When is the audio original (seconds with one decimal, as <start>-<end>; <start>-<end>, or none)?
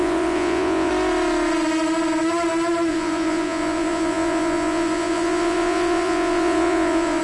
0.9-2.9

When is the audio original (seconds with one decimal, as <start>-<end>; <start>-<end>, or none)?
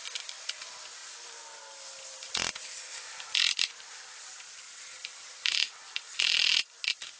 0.0-5.0; 6.8-7.2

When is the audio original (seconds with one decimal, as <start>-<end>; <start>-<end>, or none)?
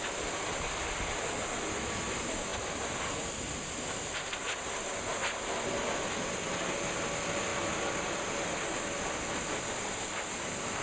0.0-10.8